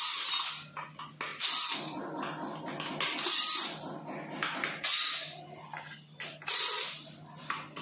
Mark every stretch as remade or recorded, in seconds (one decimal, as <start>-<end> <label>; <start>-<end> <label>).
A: 0.0-7.8 recorded